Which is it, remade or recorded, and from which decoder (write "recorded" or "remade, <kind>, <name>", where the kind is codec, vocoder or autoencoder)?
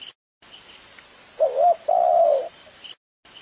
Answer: recorded